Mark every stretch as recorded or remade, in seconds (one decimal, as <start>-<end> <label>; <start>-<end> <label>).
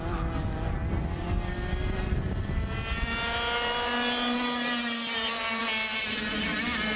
0.0-7.0 recorded